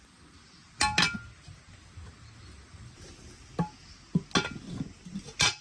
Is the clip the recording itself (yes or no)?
yes